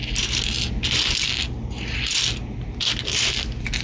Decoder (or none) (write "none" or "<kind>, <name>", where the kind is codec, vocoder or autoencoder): none